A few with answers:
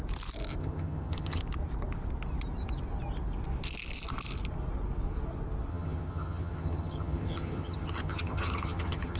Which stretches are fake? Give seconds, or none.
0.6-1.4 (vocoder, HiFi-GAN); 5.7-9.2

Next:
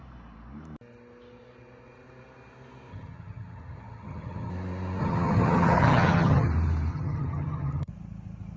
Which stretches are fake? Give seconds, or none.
2.9-4.5 (vocoder, HiFi-GAN); 5.0-6.5; 6.9-7.9

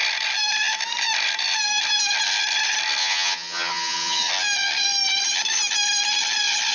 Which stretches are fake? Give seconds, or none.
3.0-4.3 (vocoder, HiFi-GAN)

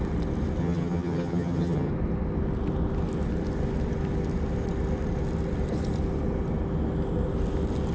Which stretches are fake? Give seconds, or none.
0.6-1.9 (vocoder, HiFi-GAN)